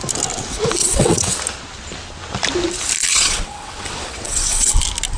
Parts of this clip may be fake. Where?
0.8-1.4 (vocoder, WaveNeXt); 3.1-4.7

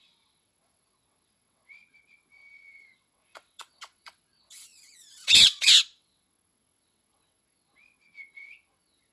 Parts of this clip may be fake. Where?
0.0-9.1 (vocoder, WaveNeXt)

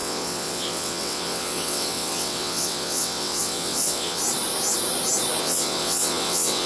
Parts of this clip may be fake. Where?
0.0-4.2 (vocoder, WaveNeXt); 5.4-6.7

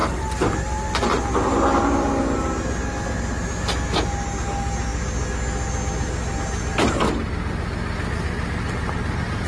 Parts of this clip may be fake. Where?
none